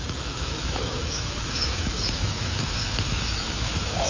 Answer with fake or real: fake